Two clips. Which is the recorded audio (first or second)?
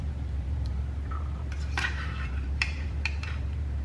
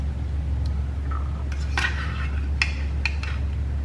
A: second